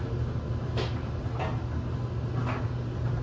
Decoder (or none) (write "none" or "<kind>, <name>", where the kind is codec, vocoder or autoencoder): none